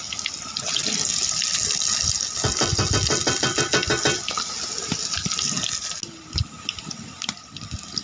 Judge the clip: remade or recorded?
recorded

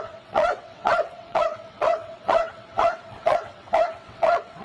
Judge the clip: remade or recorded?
remade